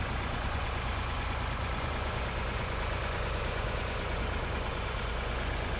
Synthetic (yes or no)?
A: yes